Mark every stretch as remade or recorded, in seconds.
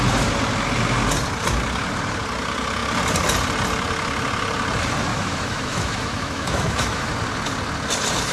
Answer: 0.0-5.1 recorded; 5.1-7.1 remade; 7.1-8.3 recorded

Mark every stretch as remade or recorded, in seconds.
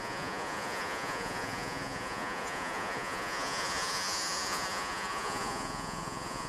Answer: 0.0-6.5 remade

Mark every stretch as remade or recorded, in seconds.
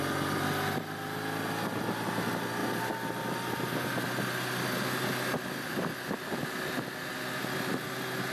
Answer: 0.0-8.3 recorded